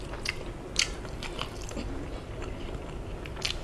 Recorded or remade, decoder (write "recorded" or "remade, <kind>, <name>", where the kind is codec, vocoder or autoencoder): recorded